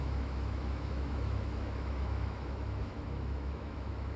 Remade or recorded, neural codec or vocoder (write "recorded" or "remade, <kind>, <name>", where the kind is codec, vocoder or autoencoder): remade, autoencoder, DAC-VAE